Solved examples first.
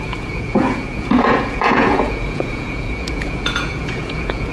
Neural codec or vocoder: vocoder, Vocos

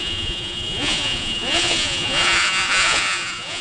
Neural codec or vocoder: vocoder, Vocos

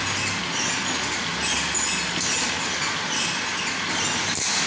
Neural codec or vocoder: none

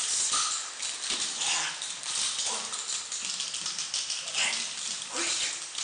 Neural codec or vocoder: none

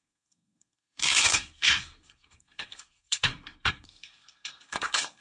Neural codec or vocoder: codec, SNAC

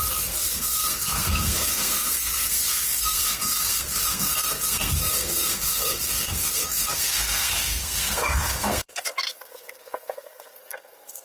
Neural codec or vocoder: codec, SNAC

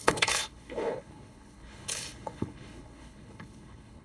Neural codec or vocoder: codec, HILCodec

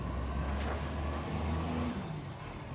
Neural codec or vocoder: none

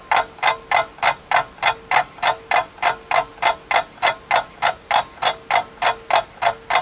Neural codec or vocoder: none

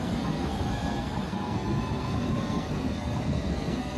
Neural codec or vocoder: codec, SNAC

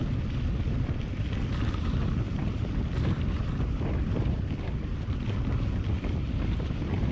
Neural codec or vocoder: none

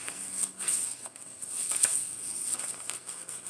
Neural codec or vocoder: codec, SNAC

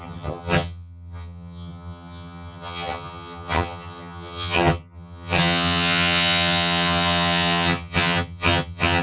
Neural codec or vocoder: vocoder, HiFi-GAN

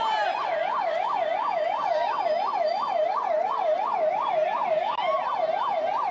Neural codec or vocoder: none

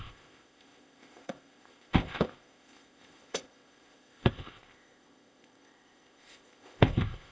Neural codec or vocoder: codec, ZipCodec